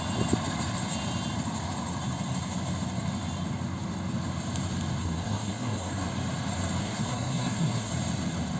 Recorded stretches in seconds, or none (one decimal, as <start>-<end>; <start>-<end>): 0.0-5.0; 6.1-6.8; 7.9-8.6